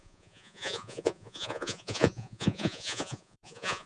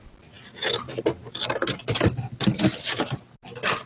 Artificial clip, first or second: first